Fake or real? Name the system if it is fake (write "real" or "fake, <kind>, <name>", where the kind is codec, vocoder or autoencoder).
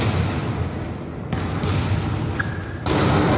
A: real